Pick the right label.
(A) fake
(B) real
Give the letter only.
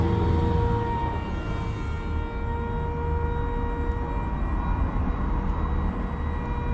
B